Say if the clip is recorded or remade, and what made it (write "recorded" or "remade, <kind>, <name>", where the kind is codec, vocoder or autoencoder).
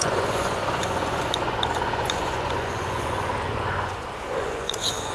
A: remade, vocoder, Vocos